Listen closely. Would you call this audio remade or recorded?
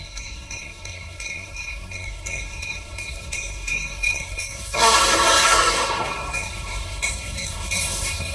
remade